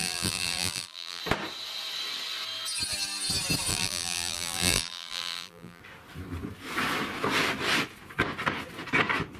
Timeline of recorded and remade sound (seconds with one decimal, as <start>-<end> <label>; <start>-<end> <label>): 0.0-1.2 remade; 1.2-3.7 recorded; 3.7-5.8 remade; 5.8-9.4 recorded